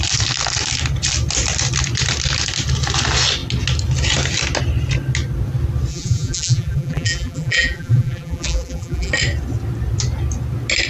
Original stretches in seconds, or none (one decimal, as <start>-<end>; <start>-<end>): 0.0-5.9; 9.1-10.9